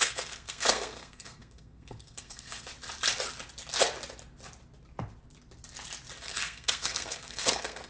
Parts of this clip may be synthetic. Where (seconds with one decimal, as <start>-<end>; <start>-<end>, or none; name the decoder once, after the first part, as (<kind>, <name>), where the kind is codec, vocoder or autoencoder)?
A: 0.0-2.7 (codec, SNAC); 6.2-7.9